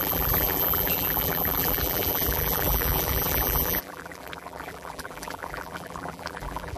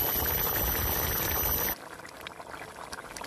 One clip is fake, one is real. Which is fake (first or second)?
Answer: first